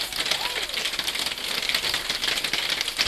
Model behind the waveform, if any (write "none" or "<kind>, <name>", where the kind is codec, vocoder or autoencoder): none